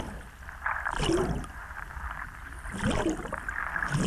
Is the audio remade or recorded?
recorded